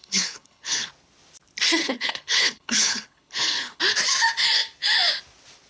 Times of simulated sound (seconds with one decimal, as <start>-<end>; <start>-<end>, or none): 0.0-0.9; 1.8-3.8